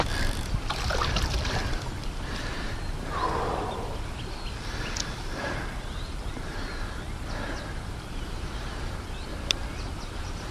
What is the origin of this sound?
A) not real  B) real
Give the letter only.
A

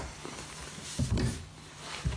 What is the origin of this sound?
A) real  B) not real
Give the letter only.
B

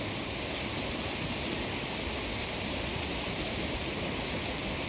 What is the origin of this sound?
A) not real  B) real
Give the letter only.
B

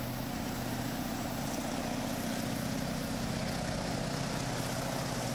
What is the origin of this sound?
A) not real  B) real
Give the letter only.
B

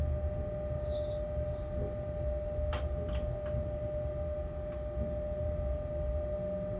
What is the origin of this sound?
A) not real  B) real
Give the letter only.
B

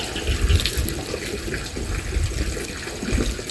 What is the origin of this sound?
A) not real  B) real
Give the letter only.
B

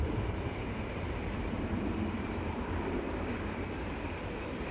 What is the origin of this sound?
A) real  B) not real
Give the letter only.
B